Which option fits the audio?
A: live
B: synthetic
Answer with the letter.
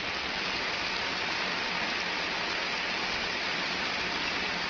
A